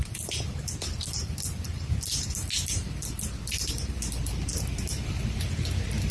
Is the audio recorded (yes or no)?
no